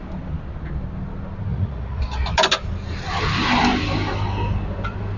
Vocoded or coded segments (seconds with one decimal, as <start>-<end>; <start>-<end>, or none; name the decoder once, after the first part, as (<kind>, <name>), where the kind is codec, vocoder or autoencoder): 1.5-2.0 (vocoder, Vocos)